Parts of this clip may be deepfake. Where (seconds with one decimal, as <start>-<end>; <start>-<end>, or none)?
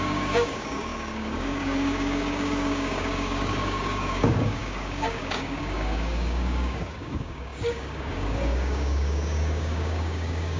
0.0-10.6